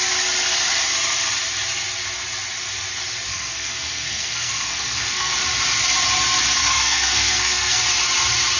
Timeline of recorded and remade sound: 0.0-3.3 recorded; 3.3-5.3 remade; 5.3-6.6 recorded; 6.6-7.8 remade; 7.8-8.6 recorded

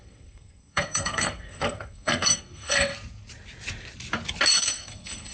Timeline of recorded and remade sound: 0.0-2.9 remade; 2.9-4.5 recorded; 4.5-5.3 remade